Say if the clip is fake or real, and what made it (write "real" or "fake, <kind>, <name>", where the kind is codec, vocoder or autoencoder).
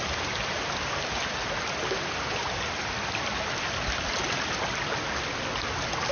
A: real